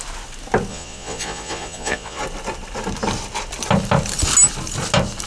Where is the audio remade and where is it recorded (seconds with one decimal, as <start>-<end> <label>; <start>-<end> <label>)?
0.0-0.7 recorded; 0.7-2.2 remade; 2.2-5.3 recorded